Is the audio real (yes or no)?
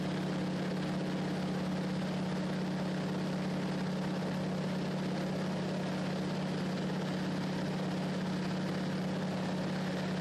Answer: yes